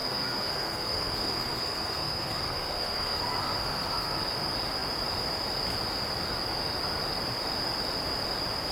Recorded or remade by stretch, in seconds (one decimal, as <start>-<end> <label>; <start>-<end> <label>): 0.0-3.2 remade; 3.2-3.6 recorded; 3.6-4.2 remade; 4.2-8.7 recorded